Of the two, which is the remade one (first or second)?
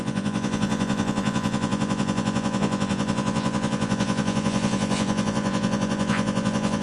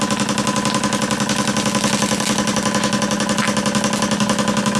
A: first